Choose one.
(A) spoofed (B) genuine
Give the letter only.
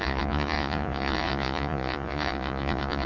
A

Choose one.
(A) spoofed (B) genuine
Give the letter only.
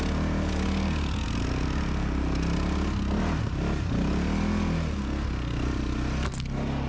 B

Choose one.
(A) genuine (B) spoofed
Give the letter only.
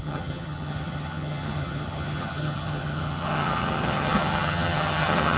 B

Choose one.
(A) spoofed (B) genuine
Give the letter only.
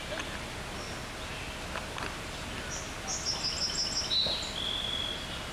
B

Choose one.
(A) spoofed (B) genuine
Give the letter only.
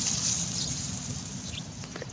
B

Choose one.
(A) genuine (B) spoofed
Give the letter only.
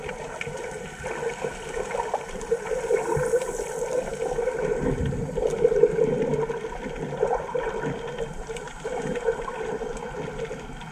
A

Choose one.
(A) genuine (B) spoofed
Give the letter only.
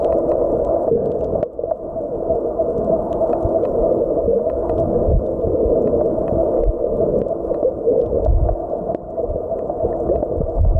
A